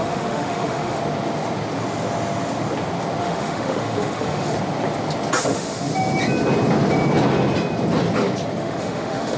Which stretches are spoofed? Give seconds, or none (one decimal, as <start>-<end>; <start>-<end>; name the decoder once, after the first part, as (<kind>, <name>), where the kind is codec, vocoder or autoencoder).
0.0-1.0 (autoencoder, DAC-VAE); 3.2-4.5; 5.4-5.9; 8.6-9.4